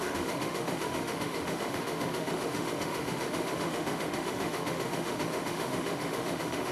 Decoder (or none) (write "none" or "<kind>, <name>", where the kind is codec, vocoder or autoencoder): autoencoder, DAC-VAE